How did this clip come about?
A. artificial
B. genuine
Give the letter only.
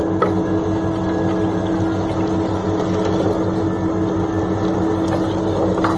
B